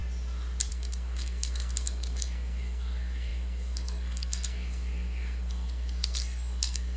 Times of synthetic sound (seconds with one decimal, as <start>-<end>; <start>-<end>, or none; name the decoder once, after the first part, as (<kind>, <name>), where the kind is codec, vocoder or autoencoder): 0.7-7.0 (codec, SNAC)